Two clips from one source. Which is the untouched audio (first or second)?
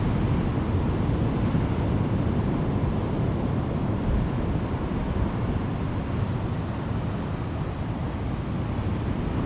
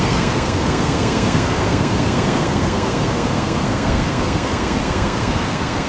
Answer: first